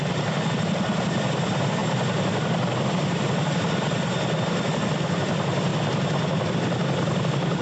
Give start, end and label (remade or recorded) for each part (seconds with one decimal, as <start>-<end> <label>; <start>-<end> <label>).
0.0-7.6 recorded